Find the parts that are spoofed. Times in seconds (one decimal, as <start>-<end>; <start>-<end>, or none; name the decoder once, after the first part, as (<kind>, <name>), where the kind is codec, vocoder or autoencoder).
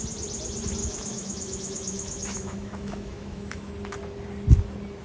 0.8-3.7 (autoencoder, DAC-VAE)